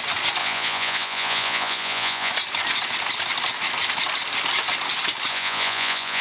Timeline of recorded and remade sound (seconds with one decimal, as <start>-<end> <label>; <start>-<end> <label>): 0.0-0.4 recorded; 0.4-2.3 remade; 2.3-5.3 recorded; 5.3-6.2 remade